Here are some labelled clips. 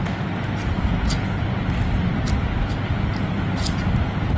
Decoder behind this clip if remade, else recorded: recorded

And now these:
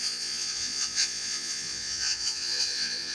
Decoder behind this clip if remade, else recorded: remade, vocoder, Vocos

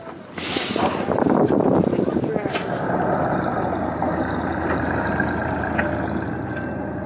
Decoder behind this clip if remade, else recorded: recorded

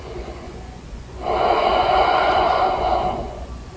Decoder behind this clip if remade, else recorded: remade, vocoder, Vocos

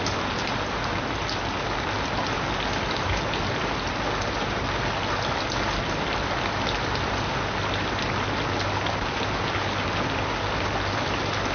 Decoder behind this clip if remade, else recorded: recorded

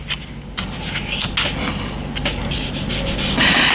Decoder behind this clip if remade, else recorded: recorded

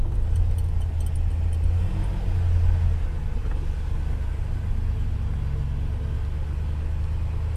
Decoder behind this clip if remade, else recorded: recorded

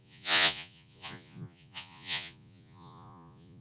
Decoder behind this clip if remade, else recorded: remade, vocoder, Vocos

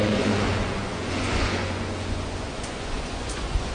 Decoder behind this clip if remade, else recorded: remade, vocoder, Vocos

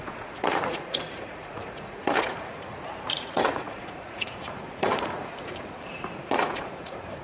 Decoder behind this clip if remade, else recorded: remade, vocoder, Vocos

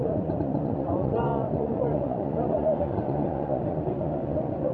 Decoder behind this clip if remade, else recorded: remade, vocoder, Vocos